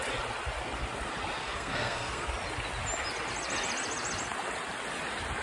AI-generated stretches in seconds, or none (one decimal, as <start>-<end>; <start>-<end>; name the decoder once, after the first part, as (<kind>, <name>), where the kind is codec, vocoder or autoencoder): 1.4-2.3 (codec, SNAC)